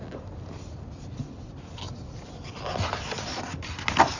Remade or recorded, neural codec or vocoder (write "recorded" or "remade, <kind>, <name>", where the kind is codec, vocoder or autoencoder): recorded